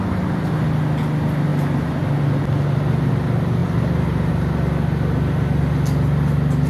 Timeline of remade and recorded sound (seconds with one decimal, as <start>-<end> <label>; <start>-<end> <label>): 0.0-3.6 recorded; 3.6-4.3 remade; 4.3-6.7 recorded